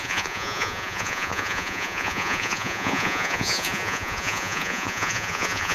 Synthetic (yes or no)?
yes